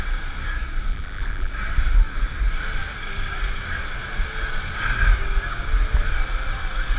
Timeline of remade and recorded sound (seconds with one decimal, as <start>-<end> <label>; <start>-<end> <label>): 0.0-0.9 recorded; 0.9-1.5 remade; 1.5-7.0 recorded